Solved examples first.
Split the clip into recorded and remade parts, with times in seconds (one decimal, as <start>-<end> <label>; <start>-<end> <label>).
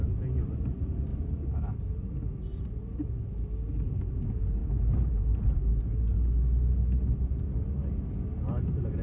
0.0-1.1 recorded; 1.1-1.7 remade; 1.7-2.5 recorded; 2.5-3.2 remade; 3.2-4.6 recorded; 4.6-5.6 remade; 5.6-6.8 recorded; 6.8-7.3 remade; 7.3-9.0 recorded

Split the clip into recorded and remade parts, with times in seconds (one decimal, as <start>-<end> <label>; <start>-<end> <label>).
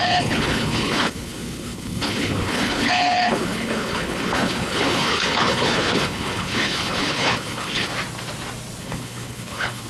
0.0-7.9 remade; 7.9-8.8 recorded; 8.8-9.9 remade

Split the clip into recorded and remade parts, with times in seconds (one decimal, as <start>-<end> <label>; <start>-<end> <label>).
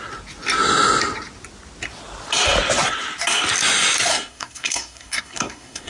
0.0-4.1 recorded; 4.1-5.9 remade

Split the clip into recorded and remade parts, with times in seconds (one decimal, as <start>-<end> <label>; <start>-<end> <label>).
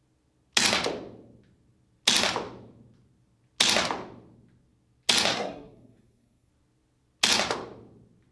0.0-5.3 recorded; 5.3-6.5 remade; 6.5-8.3 recorded